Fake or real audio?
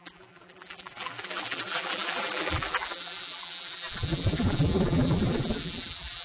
fake